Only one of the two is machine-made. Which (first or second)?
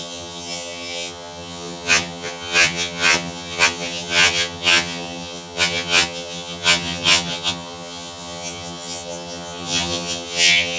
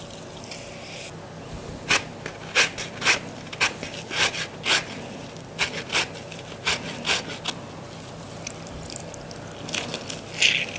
first